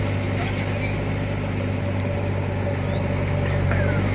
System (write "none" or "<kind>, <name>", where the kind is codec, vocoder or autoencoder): none